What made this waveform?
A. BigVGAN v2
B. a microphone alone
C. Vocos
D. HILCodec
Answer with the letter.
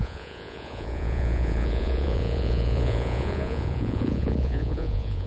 C